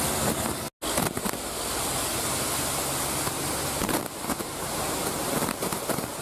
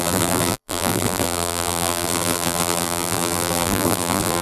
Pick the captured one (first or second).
first